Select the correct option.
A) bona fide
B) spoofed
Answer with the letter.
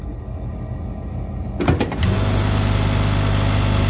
A